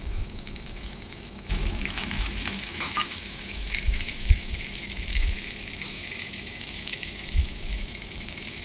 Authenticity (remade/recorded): remade